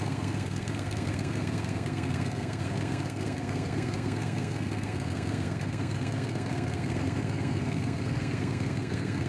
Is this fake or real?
fake